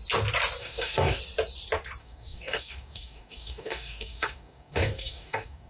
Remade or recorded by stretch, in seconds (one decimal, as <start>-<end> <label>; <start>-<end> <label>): 0.0-0.6 recorded; 0.6-1.2 remade; 1.2-2.0 recorded; 2.0-5.7 remade